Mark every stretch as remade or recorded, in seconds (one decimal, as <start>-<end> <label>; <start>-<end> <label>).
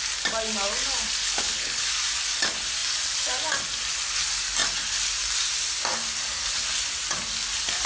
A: 0.0-1.2 recorded; 1.2-1.9 remade; 1.9-7.9 recorded